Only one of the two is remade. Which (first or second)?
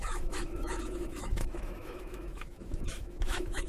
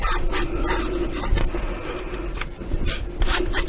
first